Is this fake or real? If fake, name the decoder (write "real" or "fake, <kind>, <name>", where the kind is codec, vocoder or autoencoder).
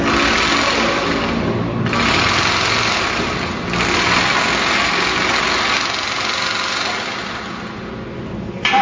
real